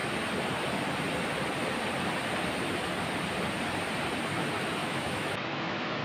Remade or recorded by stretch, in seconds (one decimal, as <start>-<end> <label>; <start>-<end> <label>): 0.0-4.8 recorded; 4.8-6.0 remade